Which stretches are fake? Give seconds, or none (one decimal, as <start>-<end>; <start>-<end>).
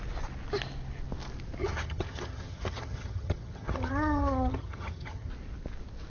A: 1.6-5.3